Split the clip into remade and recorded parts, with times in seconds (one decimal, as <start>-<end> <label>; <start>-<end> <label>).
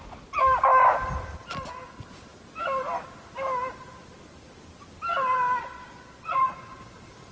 0.0-5.6 recorded; 5.6-6.8 remade; 6.8-7.3 recorded